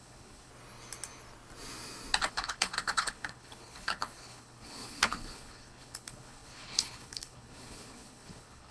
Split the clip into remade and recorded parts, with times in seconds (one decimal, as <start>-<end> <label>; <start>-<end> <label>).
0.0-0.5 remade; 0.5-2.3 recorded; 2.3-8.7 remade